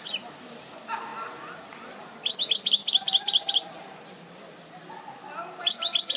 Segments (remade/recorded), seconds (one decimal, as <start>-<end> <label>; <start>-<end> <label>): 0.0-6.2 recorded